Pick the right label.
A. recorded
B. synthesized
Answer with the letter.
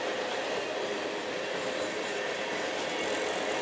A